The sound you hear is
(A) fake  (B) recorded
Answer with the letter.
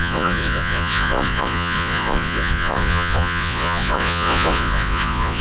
A